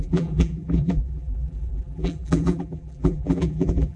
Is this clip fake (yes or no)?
yes